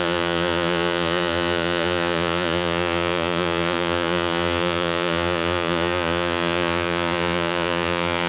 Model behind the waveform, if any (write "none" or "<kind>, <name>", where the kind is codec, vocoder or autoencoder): vocoder, Vocos